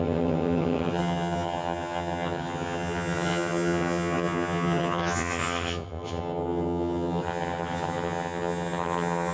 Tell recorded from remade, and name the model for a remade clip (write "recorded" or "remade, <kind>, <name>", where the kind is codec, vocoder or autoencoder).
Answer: remade, vocoder, HiFi-GAN